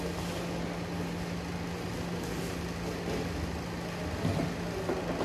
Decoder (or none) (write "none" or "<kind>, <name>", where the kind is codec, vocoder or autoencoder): none